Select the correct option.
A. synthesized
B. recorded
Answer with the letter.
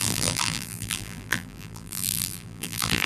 A